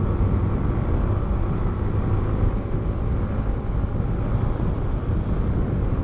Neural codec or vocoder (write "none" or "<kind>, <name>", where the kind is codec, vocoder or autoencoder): none